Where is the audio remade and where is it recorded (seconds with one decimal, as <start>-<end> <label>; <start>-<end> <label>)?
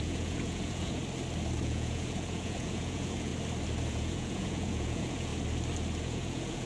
0.0-1.0 remade; 1.0-1.6 recorded; 1.6-3.3 remade; 3.3-3.9 recorded; 3.9-5.3 remade; 5.3-6.0 recorded; 6.0-6.7 remade